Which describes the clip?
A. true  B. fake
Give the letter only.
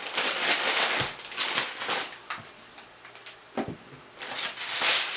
A